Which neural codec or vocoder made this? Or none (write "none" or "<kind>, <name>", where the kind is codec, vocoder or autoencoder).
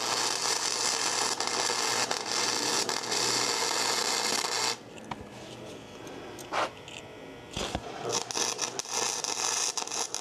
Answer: none